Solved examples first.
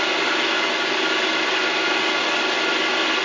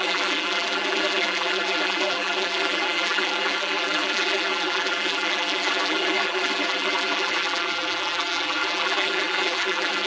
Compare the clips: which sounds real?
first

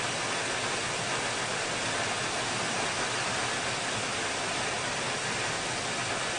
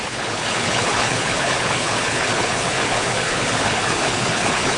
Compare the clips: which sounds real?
first